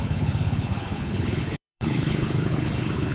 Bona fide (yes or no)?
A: no